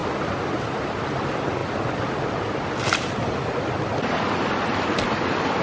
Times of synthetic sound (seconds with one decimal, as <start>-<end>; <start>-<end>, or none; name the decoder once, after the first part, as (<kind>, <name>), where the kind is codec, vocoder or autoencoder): none